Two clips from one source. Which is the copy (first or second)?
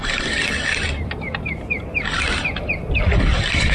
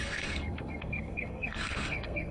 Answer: second